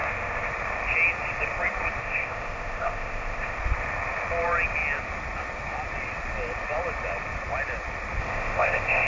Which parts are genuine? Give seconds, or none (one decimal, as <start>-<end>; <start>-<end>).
0.5-2.0; 3.6-8.2